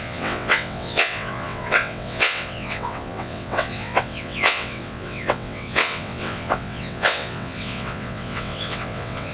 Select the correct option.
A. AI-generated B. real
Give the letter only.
A